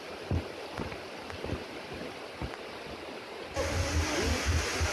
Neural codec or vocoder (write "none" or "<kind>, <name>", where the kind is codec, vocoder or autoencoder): none